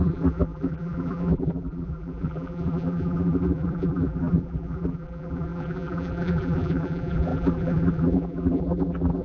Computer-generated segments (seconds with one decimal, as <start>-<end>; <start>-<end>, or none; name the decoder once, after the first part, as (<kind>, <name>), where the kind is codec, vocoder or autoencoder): 0.0-9.2 (vocoder, BigVGAN v2)